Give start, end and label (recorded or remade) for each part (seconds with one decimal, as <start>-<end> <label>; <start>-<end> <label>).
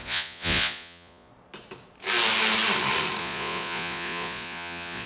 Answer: 0.0-1.3 remade; 1.3-3.2 recorded; 3.2-5.1 remade